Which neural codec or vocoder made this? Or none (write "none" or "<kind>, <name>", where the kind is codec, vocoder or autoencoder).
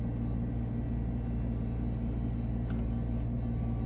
none